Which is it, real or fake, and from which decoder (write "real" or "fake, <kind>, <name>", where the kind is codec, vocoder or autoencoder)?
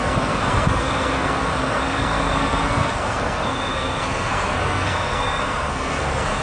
fake, codec, SNAC